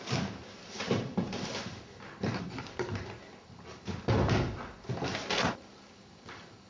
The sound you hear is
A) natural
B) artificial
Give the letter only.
A